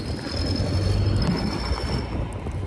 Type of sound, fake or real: real